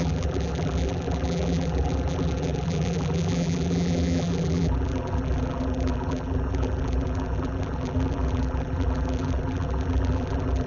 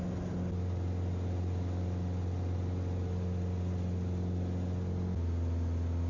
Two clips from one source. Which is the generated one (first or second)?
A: first